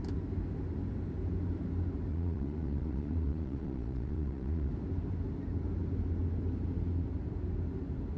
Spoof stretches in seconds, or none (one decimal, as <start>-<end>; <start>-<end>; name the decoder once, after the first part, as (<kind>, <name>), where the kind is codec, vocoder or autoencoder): 2.1-4.7 (vocoder, Vocos)